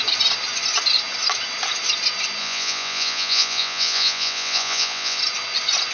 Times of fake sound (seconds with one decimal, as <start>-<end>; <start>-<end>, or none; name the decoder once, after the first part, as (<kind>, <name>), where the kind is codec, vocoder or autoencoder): 2.4-5.2 (vocoder, Vocos)